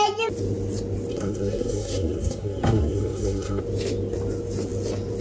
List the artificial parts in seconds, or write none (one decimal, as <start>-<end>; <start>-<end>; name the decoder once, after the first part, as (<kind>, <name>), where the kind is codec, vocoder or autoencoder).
1.1-3.6 (codec, SNAC)